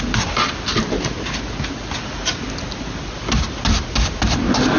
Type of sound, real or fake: real